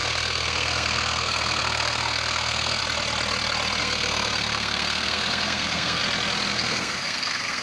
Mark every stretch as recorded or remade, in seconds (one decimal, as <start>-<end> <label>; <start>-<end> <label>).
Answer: 0.0-2.8 remade; 2.8-3.8 recorded; 3.8-6.0 remade; 6.0-6.5 recorded; 6.5-7.6 remade